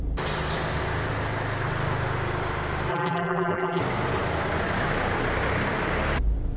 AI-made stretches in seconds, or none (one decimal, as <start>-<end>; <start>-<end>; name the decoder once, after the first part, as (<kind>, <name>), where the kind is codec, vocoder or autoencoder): 2.9-3.8 (vocoder, BigVGAN v2)